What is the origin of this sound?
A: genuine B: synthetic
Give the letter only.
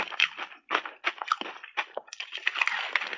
B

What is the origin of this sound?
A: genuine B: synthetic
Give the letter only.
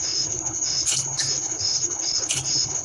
B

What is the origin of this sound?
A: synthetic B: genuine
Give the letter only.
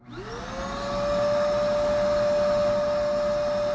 B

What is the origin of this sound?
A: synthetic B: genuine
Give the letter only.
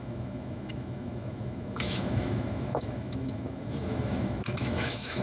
A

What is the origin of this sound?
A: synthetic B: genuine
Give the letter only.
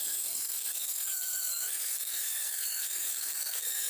A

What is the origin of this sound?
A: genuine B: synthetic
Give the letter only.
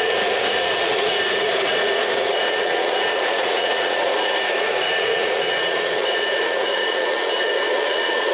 B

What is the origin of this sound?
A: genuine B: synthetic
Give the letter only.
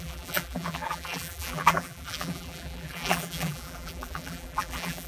B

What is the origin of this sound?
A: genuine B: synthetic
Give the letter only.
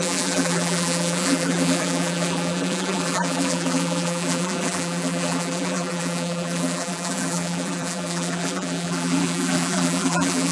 B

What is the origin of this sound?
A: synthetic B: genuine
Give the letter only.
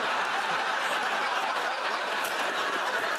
A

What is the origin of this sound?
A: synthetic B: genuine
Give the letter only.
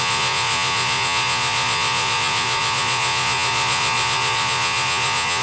A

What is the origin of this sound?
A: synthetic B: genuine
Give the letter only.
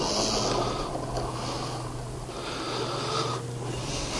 B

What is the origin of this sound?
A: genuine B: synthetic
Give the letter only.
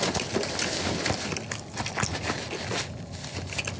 A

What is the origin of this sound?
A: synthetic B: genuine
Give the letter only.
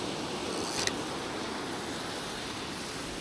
B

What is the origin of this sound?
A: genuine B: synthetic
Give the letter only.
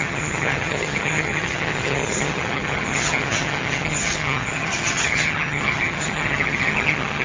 B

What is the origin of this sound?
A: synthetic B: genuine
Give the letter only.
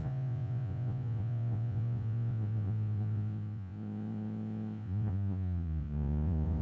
A